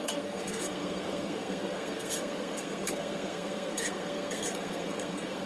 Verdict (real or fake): fake